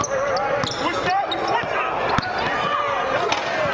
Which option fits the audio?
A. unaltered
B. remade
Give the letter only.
A